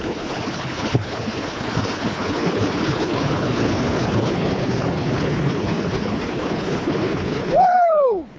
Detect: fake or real fake